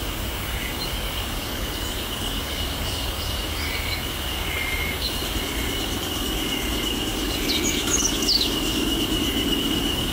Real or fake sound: fake